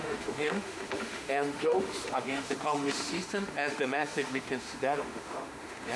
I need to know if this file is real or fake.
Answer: fake